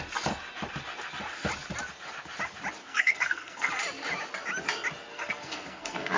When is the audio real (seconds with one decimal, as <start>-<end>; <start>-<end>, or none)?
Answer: 0.0-2.8; 3.7-5.1